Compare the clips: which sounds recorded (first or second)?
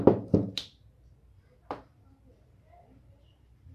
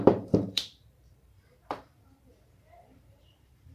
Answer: first